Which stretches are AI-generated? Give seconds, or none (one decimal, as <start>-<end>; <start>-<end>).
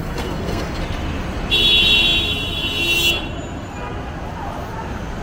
0.0-0.8